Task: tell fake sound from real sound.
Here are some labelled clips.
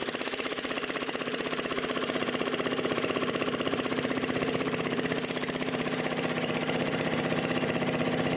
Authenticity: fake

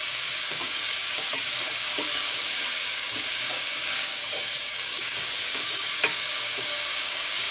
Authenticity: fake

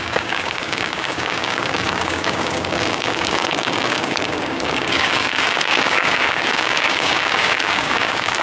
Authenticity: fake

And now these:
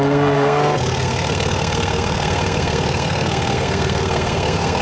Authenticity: fake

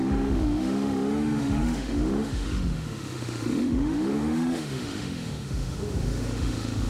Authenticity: fake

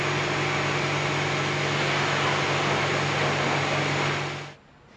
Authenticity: real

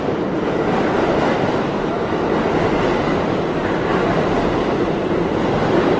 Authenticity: real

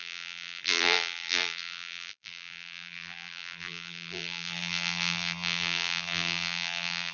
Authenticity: fake